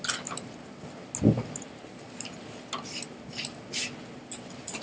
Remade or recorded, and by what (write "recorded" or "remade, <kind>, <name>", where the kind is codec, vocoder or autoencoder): recorded